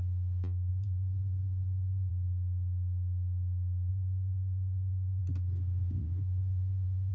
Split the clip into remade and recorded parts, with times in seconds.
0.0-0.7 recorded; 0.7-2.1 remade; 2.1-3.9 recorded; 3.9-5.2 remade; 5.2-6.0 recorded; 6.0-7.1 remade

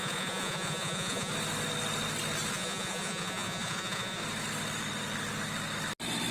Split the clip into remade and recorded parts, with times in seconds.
0.0-1.3 remade; 1.3-2.5 recorded; 2.5-4.2 remade; 4.2-6.3 recorded